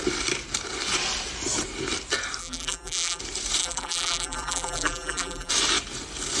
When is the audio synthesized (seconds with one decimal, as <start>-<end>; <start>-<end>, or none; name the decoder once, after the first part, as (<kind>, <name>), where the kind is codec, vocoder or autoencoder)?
2.4-3.2 (vocoder, BigVGAN v2); 3.6-5.5